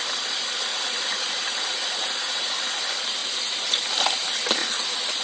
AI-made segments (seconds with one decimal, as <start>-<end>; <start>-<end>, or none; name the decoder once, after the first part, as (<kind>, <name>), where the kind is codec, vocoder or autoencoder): 0.7-2.5 (vocoder, Vocos); 3.2-3.8; 4.6-5.2